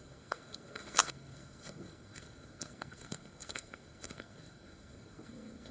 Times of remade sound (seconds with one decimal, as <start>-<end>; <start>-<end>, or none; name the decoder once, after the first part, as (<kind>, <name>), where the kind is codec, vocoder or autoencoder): 0.0-5.7 (codec, SNAC)